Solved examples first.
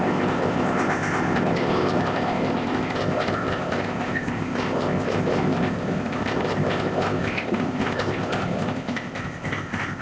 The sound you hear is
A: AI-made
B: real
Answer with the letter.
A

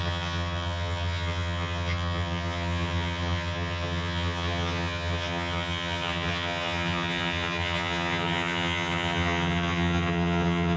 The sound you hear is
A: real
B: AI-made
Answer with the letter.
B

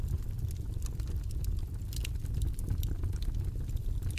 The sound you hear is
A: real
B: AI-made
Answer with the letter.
A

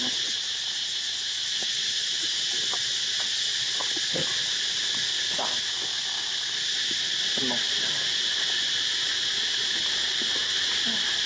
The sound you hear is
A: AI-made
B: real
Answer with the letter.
B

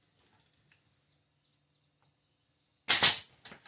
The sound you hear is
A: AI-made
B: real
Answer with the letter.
B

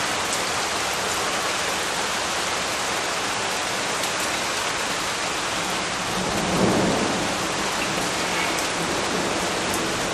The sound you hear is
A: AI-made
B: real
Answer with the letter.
B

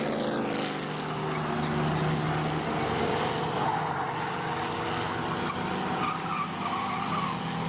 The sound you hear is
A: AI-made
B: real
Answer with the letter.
B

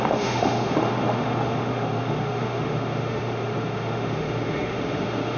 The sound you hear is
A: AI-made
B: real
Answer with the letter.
A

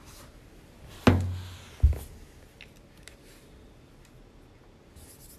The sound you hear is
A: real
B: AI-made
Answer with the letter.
A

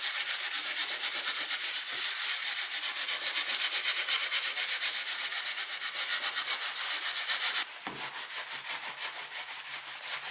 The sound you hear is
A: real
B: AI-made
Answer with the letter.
A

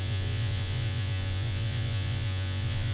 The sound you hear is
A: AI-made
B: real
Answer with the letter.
A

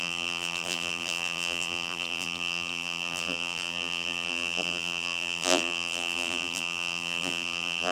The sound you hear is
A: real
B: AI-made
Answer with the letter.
B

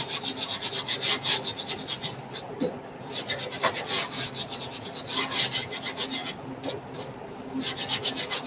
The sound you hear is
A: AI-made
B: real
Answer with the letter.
B